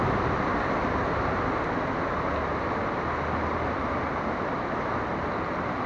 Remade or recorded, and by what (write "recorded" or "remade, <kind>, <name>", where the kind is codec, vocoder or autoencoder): recorded